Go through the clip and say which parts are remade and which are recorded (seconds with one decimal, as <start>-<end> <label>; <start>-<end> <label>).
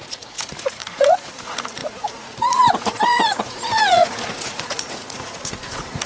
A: 0.0-6.1 remade